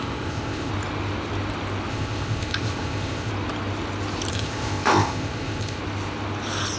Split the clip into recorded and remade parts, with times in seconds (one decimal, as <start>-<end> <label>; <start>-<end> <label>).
0.0-0.7 remade; 0.7-1.9 recorded; 1.9-3.3 remade; 3.3-4.3 recorded; 4.3-5.8 remade; 5.8-6.8 recorded

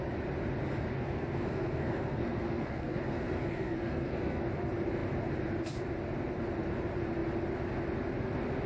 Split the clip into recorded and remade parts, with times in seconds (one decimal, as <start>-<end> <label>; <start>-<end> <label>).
0.0-0.9 recorded; 0.9-4.4 remade; 4.4-8.7 recorded

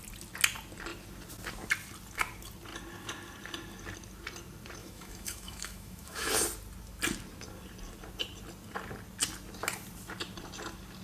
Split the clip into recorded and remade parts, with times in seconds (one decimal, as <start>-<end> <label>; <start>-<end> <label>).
0.0-4.8 recorded; 4.8-6.3 remade; 6.3-11.0 recorded